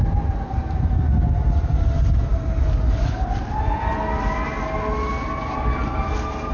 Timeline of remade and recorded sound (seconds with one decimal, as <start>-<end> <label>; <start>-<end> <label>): 0.0-6.5 recorded

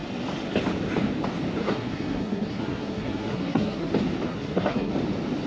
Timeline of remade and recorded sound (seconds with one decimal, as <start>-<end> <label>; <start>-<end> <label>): 0.0-1.6 recorded; 1.6-3.9 remade; 3.9-4.3 recorded; 4.3-4.9 remade; 4.9-5.5 recorded

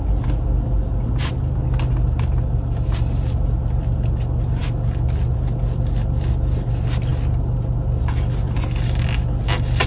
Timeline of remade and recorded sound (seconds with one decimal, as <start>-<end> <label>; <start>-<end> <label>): 0.0-9.9 recorded